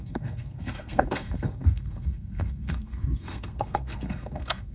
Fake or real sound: fake